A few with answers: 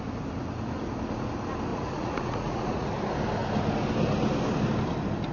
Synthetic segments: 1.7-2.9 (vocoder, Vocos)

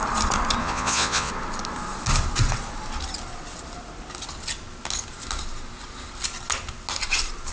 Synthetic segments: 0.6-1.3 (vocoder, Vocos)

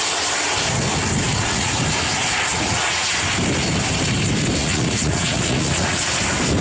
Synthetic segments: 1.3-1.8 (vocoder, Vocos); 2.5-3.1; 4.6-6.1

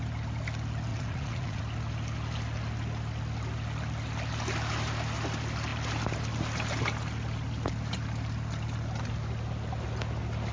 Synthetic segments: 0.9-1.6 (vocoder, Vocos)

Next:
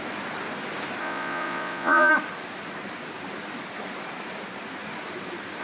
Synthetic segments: 1.0-2.1 (vocoder, Vocos)

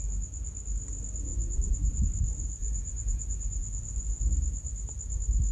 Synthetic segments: 1.3-2.0 (vocoder, Vocos); 2.6-4.2